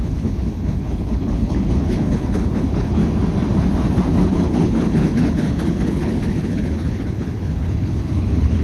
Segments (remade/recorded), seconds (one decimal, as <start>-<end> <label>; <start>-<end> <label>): 0.0-3.0 remade; 3.0-4.3 recorded; 4.3-8.6 remade